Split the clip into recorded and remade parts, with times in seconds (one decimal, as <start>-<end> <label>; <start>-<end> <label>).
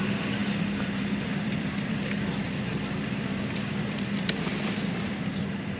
0.0-5.8 remade